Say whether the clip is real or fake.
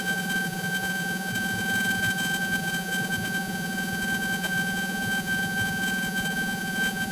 fake